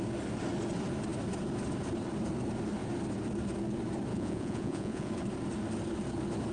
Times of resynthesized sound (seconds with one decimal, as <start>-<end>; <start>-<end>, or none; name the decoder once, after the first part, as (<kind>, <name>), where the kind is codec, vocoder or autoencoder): 4.1-5.1 (vocoder, Vocos)